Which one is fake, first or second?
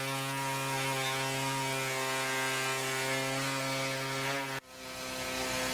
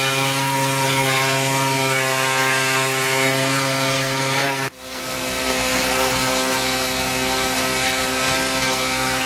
second